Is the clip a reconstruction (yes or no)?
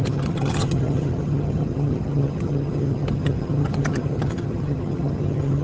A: yes